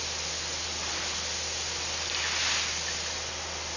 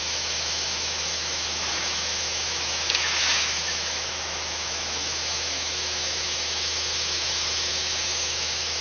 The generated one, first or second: second